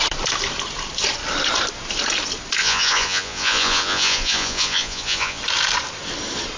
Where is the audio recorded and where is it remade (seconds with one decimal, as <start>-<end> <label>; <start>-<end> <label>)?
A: 0.0-2.6 recorded; 2.6-5.4 remade; 5.4-6.6 recorded